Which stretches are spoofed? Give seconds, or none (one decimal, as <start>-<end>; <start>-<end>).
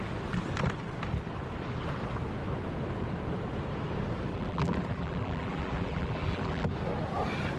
4.3-6.7